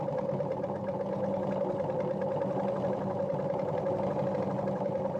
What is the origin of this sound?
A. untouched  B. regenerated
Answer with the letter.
A